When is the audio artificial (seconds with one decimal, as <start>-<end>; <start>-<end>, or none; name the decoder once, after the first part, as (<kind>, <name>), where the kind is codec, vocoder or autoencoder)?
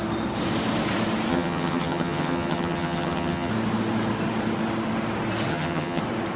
1.3-3.5 (vocoder, HiFi-GAN); 5.5-6.0